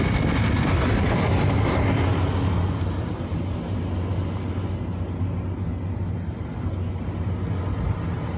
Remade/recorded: recorded